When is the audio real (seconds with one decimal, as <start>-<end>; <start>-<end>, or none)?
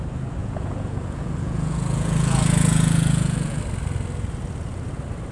0.0-0.4; 3.6-5.3